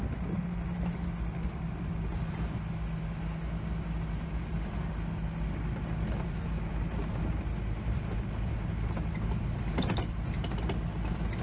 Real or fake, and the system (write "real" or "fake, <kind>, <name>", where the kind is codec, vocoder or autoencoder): real